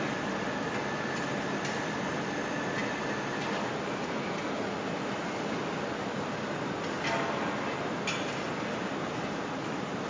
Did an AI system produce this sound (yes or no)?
no